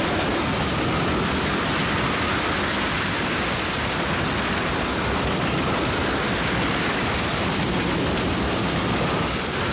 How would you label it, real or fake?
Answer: real